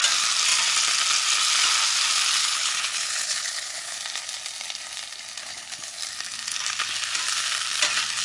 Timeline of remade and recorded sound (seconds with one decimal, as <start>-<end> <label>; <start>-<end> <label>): 0.0-2.4 recorded; 2.4-4.0 remade; 4.0-5.4 recorded; 5.4-6.0 remade; 6.0-8.2 recorded

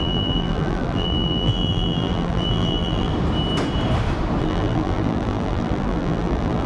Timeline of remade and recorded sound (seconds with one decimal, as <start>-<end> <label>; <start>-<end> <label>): 0.0-3.1 remade; 3.1-4.4 recorded; 4.4-6.7 remade

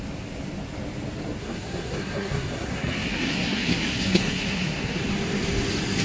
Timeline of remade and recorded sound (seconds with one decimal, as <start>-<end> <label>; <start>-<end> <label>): 0.0-1.4 recorded; 1.4-5.0 remade; 5.0-6.0 recorded

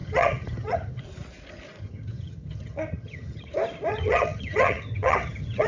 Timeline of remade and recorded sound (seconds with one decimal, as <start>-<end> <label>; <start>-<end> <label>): 0.0-1.0 remade; 1.0-1.8 recorded; 1.8-3.5 remade; 3.5-3.9 recorded; 3.9-5.7 remade

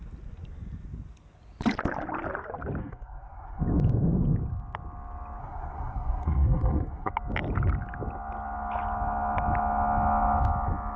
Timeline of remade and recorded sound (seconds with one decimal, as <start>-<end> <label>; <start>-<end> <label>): 0.0-2.8 recorded; 2.8-3.6 remade; 3.6-5.4 recorded; 5.4-7.1 remade; 7.1-11.0 recorded

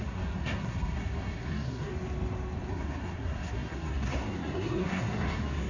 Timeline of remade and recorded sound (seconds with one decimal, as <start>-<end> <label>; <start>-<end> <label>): 0.0-1.9 remade; 1.9-2.7 recorded; 2.7-5.7 remade

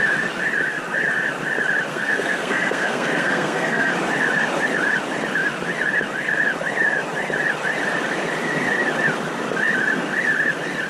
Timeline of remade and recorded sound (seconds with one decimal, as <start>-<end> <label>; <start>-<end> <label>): 0.0-1.9 recorded; 1.9-3.9 remade; 3.9-10.9 recorded

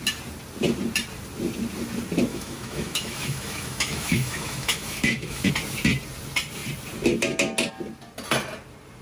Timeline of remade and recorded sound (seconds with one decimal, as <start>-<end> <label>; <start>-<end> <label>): 0.0-2.3 recorded; 2.3-5.5 remade; 5.5-9.0 recorded